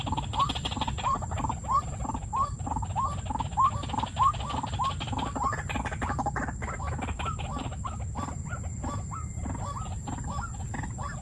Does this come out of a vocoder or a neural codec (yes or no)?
no